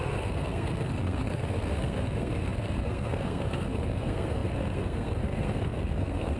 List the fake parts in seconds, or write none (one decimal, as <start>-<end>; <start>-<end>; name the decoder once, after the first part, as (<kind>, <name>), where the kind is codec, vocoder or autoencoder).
0.0-6.4 (codec, SNAC)